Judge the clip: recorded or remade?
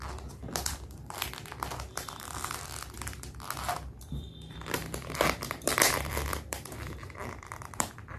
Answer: remade